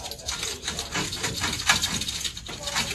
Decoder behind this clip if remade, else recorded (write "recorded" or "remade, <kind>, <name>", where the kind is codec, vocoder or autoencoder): recorded